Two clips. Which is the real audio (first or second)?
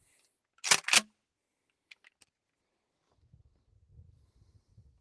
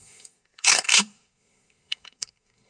first